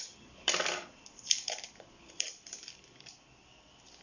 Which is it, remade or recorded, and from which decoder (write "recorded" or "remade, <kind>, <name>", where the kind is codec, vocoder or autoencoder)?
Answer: remade, vocoder, BigVGAN v2